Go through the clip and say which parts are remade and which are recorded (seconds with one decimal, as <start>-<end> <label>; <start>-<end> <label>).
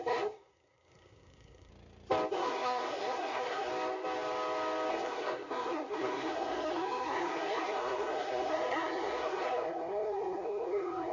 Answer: 0.0-1.7 remade; 1.7-2.3 recorded; 2.3-3.7 remade; 3.7-4.9 recorded; 4.9-11.1 remade